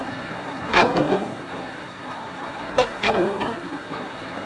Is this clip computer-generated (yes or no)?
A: yes